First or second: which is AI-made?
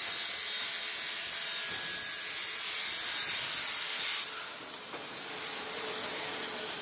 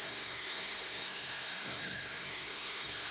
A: second